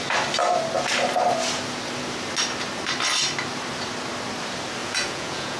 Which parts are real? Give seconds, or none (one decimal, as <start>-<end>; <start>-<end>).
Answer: 0.0-4.8

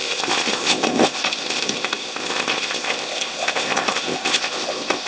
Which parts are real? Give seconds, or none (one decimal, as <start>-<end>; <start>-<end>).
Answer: none

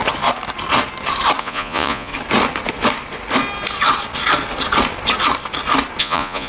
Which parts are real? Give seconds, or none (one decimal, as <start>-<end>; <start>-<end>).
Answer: 0.0-1.4; 2.1-6.0